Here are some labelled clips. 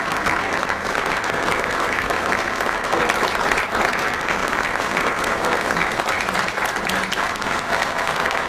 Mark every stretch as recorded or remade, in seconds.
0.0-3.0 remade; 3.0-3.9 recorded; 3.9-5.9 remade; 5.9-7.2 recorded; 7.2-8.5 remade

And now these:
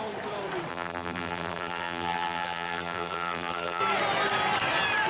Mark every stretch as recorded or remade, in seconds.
0.0-0.7 recorded; 0.7-3.8 remade; 3.8-5.1 recorded

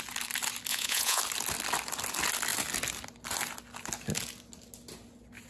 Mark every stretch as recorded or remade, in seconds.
0.0-0.7 recorded; 0.7-1.2 remade; 1.2-5.5 recorded

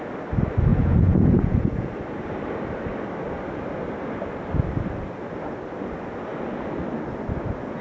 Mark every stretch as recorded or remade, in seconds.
0.0-0.7 recorded; 0.7-1.9 remade; 1.9-7.8 recorded

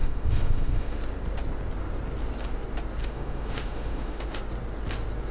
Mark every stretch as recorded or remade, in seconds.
0.0-1.0 remade; 1.0-3.0 recorded; 3.0-4.4 remade; 4.4-5.3 recorded